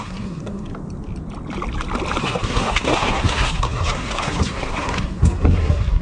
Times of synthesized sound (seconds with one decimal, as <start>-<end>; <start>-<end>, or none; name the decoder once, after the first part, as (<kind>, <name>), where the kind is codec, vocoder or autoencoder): 0.0-0.7 (codec, SNAC); 2.2-6.0